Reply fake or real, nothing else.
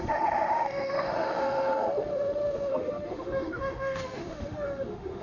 fake